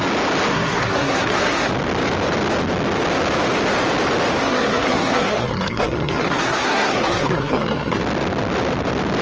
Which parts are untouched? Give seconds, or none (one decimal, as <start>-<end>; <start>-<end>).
0.0-0.5; 1.7-4.4; 8.0-9.2